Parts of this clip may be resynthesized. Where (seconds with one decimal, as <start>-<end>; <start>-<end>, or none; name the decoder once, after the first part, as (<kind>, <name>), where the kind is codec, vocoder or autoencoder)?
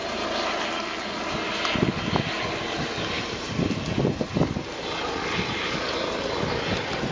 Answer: none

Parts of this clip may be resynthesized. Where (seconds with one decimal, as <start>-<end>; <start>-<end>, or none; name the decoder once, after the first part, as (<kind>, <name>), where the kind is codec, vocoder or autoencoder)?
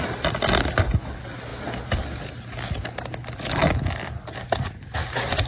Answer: none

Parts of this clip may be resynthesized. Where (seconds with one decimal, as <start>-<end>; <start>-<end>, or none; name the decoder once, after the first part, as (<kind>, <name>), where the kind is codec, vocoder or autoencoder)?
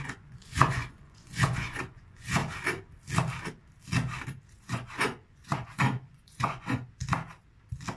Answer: 0.0-2.4 (vocoder, Vocos); 4.5-7.0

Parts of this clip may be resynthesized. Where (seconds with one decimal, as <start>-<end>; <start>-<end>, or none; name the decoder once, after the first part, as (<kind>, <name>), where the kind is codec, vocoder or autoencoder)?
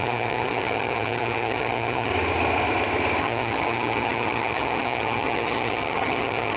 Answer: 0.0-2.1 (vocoder, HiFi-GAN); 3.2-6.6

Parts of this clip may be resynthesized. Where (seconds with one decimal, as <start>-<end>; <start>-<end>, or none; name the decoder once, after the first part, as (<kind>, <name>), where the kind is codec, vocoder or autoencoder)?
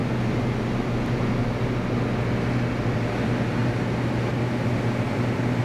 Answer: none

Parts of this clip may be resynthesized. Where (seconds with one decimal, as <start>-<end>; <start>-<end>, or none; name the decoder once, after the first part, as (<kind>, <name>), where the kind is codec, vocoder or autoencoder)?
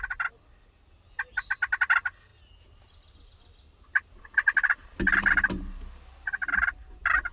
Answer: none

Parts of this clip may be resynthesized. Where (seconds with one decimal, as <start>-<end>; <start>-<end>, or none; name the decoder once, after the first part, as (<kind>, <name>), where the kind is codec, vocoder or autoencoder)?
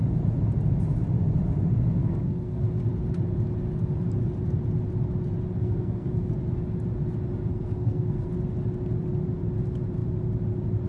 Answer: 2.0-2.7 (codec, SNAC); 5.6-6.3; 7.5-8.3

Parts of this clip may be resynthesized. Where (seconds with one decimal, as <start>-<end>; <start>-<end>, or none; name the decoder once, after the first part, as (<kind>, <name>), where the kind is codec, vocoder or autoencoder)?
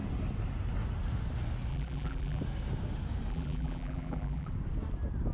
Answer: 1.7-2.4 (vocoder, BigVGAN v2); 3.3-4.5